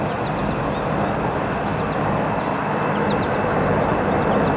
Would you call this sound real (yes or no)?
yes